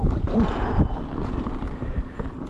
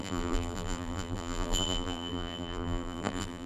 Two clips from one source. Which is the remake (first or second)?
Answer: second